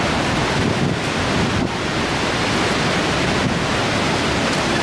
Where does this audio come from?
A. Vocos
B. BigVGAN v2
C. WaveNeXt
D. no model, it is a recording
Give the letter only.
D